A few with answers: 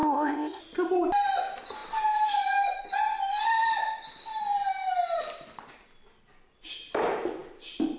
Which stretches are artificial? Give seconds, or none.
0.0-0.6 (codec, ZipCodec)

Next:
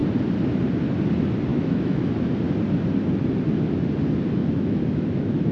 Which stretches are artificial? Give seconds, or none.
1.5-2.1 (autoencoder, DAC-VAE); 4.4-5.5

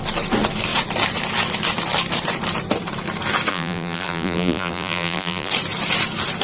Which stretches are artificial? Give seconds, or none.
3.5-5.5 (vocoder, BigVGAN v2)

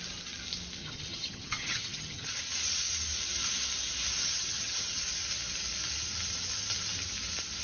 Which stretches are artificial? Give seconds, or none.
0.8-2.4 (vocoder, HiFi-GAN); 4.2-5.0

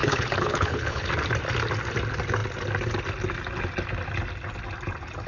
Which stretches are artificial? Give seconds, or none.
0.0-1.1 (codec, HILCodec)

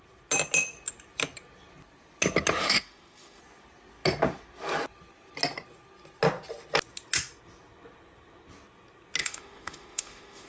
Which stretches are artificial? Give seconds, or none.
2.6-3.4 (autoencoder, DAC-VAE); 9.2-10.5